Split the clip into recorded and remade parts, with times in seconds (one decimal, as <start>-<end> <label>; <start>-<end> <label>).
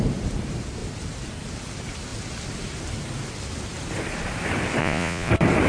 0.0-4.8 recorded; 4.8-5.3 remade; 5.3-5.7 recorded